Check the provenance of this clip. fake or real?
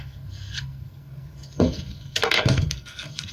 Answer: fake